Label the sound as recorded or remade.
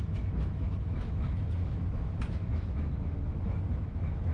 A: remade